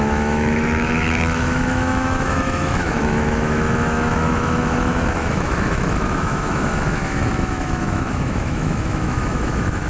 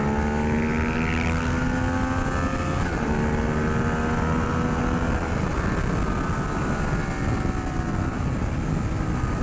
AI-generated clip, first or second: first